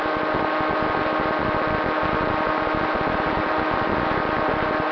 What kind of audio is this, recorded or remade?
recorded